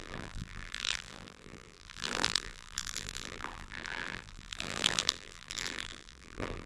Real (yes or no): no